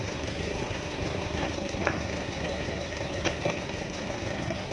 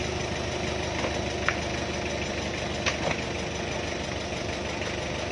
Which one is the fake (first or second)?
first